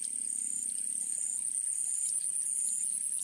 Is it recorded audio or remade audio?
recorded